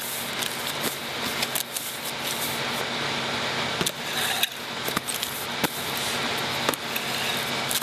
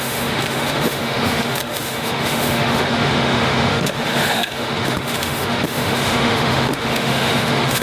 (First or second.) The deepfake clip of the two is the second